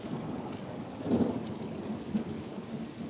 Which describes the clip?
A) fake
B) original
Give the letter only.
A